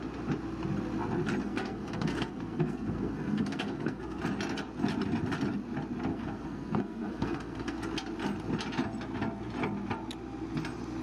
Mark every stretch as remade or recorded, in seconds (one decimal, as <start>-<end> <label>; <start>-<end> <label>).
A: 0.0-1.4 recorded; 1.4-4.2 remade; 4.2-6.1 recorded; 6.1-7.8 remade; 7.8-11.0 recorded